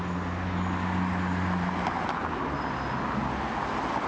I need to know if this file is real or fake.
real